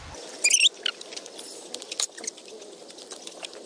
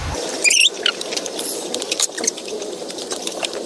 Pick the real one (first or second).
first